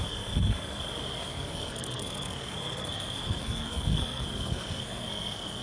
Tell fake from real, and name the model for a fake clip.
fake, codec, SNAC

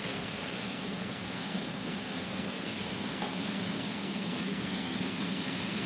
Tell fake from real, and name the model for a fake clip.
fake, codec, SNAC